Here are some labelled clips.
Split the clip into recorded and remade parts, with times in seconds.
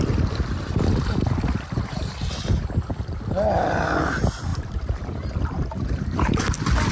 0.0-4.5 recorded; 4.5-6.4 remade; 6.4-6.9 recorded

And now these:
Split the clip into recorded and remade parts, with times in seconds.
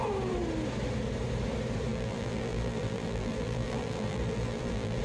0.0-1.9 recorded; 1.9-5.0 remade